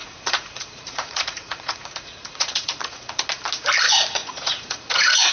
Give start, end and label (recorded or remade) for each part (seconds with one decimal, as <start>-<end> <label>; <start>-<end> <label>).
0.0-3.2 remade; 3.2-4.2 recorded; 4.2-5.3 remade